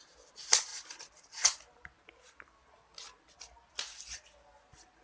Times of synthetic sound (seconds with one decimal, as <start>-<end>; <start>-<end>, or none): none